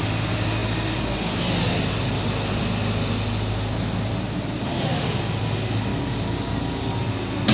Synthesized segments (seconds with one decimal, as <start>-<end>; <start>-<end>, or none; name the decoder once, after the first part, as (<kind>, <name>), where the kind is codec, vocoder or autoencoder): 5.9-7.0 (codec, DAC)